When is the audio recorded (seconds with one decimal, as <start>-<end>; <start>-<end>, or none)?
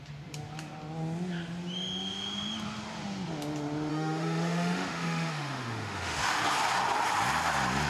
0.0-3.9; 6.4-7.9